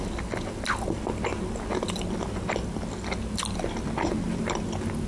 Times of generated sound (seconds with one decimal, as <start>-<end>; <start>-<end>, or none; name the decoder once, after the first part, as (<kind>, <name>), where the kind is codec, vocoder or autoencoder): none